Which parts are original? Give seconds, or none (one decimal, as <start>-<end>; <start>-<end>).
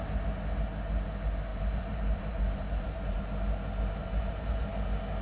0.0-1.5; 3.2-4.0; 4.7-5.2